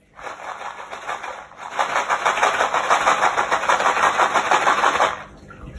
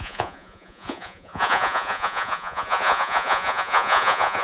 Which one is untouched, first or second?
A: first